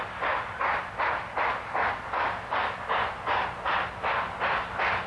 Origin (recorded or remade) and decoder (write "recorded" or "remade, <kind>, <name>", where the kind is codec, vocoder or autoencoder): recorded